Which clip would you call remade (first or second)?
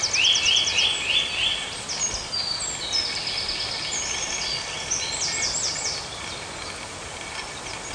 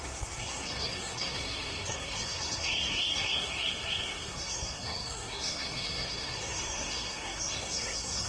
second